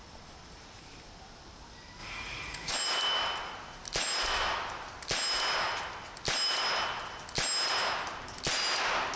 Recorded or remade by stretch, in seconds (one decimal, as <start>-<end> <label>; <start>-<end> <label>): 0.0-2.0 recorded; 2.0-2.7 remade; 2.7-9.2 recorded